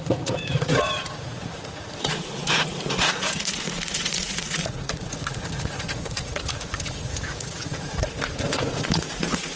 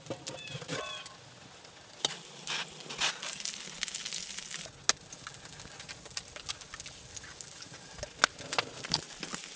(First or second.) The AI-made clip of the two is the first